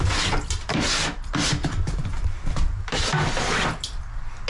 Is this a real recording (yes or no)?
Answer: yes